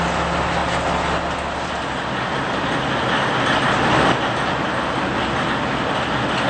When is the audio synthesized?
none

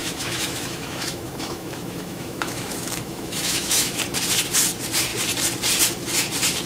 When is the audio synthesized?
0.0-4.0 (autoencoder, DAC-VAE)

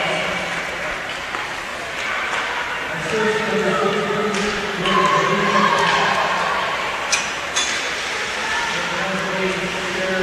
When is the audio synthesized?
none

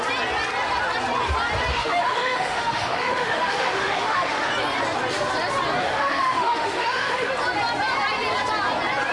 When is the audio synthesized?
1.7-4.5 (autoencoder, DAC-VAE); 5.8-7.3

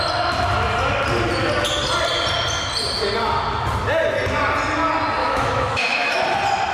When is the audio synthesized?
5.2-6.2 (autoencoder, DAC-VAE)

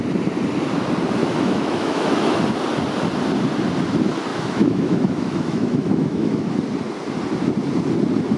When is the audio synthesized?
1.2-2.4 (autoencoder, DAC-VAE); 4.3-6.5

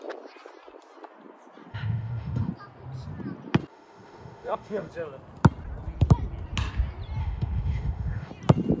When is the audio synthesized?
1.7-2.5 (autoencoder, DAC-VAE); 3.7-4.9; 7.2-8.3

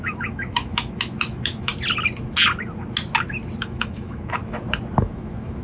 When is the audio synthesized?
0.0-1.7 (autoencoder, DAC-VAE); 3.6-4.4; 5.0-5.6